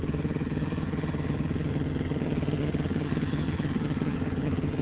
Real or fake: fake